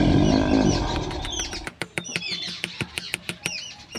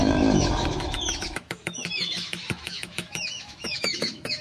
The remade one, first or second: second